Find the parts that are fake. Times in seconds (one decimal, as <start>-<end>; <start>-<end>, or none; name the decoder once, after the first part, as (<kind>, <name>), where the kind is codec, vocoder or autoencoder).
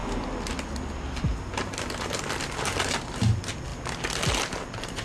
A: none